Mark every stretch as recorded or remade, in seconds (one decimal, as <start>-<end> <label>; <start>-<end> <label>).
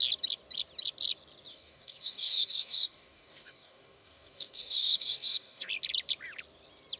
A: 0.0-1.5 recorded; 1.5-5.7 remade; 5.7-7.0 recorded